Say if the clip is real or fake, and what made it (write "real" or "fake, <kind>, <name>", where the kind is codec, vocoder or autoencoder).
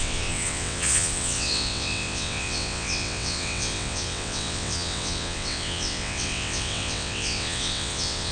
fake, vocoder, WaveNeXt